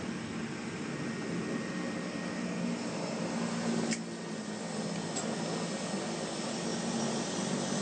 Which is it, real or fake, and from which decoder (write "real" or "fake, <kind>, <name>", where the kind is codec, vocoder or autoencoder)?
real